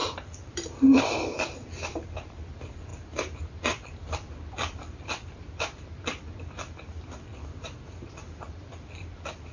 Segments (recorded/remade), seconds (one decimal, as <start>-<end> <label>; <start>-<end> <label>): 0.0-9.5 remade